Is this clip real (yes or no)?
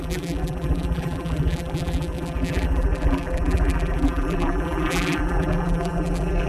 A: no